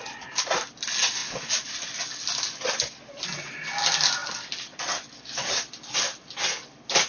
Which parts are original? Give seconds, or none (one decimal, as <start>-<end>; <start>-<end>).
0.0-7.1

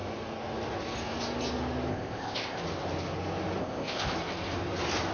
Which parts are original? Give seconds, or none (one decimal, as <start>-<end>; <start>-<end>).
0.0-1.9; 2.6-3.6; 4.1-5.1

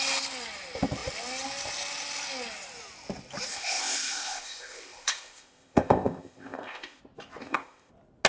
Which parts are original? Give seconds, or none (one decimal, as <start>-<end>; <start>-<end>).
0.0-3.5; 7.0-7.4; 7.9-8.3

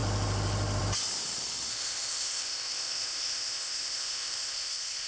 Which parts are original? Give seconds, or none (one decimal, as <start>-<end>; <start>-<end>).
0.0-1.7

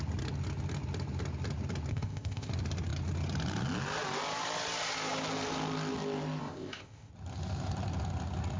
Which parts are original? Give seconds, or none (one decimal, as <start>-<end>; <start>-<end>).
0.0-1.9; 2.5-6.4; 7.1-8.6

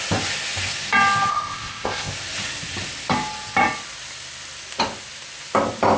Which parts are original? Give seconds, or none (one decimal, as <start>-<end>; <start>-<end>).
0.0-1.3; 2.1-6.0

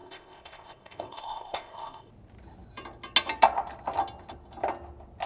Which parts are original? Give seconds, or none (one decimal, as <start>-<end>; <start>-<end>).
2.1-5.3

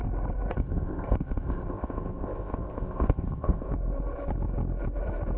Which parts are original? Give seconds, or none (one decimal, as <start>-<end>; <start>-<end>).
0.0-0.5; 3.7-5.4